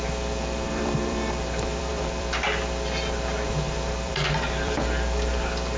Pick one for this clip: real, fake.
fake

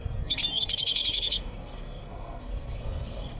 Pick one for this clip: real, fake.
fake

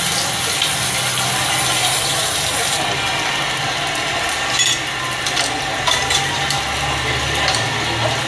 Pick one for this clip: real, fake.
real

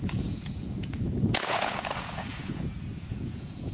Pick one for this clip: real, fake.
fake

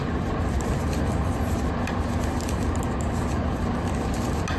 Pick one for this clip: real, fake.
real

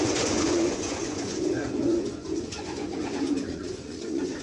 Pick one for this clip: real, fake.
fake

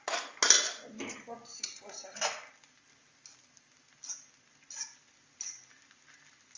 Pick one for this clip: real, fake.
real